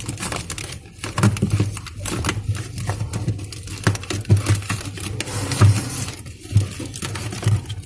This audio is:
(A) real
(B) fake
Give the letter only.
A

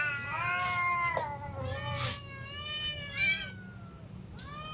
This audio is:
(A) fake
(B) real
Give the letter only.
B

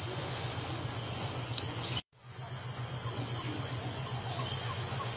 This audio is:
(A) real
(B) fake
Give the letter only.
B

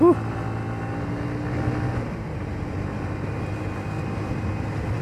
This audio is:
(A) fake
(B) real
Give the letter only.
B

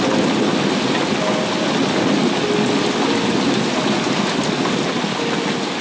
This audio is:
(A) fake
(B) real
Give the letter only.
B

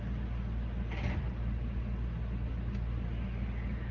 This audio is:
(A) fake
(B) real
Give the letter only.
B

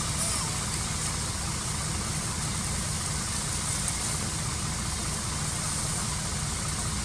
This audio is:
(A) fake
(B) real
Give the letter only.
B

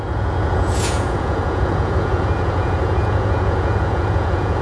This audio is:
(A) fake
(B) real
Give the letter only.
A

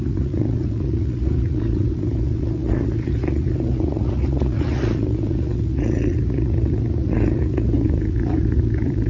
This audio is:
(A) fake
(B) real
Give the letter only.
A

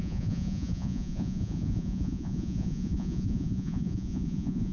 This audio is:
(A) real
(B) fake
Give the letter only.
B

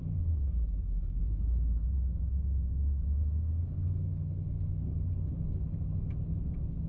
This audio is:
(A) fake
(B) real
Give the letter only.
B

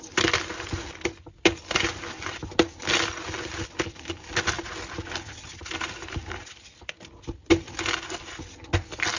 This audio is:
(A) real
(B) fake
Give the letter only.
A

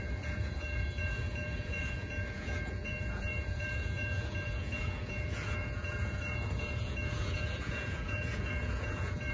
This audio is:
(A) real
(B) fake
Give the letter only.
B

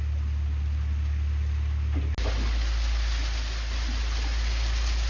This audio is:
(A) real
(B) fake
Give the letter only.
A